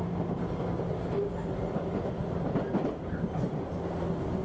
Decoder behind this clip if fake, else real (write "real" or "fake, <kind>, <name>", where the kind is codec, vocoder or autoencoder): real